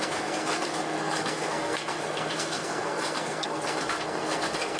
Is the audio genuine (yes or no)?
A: no